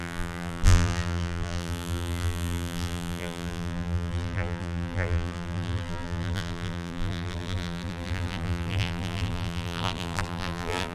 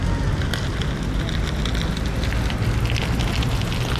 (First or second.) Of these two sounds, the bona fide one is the second